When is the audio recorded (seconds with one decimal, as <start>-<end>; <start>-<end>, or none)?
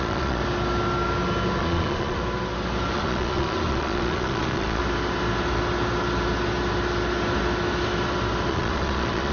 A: 0.4-1.6; 2.2-2.9; 4.8-8.5